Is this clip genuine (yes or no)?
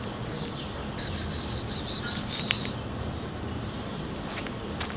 yes